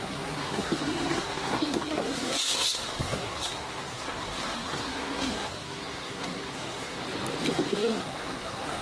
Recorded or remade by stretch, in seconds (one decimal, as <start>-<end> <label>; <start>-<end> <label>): 0.0-7.0 remade; 7.0-7.5 recorded; 7.5-8.8 remade